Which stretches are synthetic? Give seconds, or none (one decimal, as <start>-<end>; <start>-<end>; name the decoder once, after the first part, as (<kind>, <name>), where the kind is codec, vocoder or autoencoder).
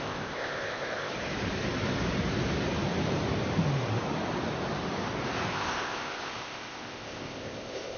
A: 0.0-1.1 (codec, ZipCodec); 5.5-8.0